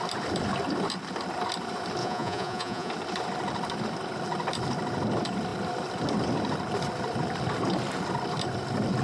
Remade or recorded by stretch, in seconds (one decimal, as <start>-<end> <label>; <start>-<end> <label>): 0.0-2.0 recorded; 2.0-2.9 remade; 2.9-9.0 recorded